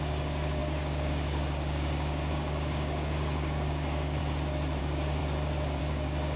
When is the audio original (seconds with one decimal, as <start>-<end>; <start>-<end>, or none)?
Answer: 4.2-4.8; 5.2-5.8